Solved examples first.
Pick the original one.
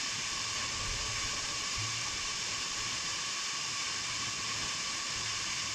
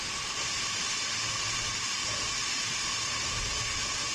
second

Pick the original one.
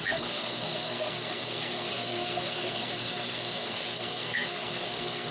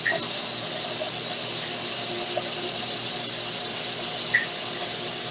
second